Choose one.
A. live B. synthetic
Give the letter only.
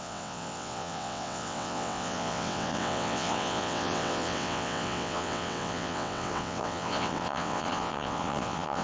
B